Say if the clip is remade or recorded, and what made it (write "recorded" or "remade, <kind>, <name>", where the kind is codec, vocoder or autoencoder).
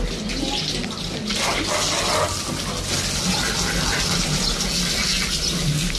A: recorded